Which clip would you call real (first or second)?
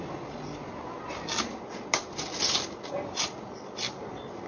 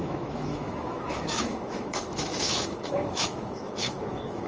first